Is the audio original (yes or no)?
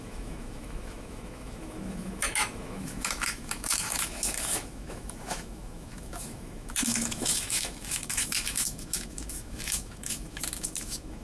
no